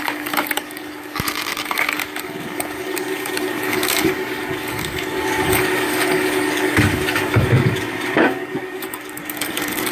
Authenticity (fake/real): fake